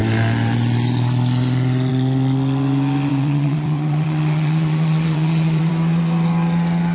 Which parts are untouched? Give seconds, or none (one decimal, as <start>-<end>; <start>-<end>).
0.0-3.1; 5.7-6.9